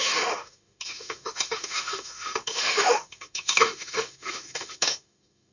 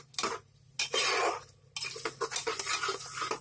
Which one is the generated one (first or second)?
first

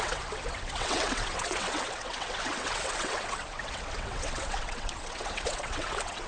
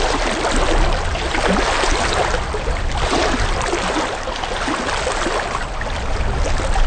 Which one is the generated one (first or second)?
first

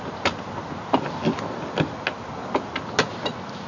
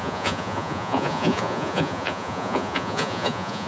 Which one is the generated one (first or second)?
second